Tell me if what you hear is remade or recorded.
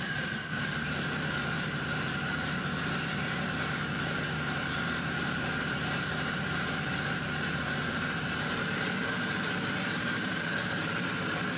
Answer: remade